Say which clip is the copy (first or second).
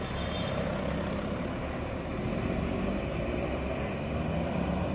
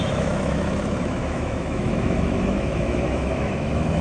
second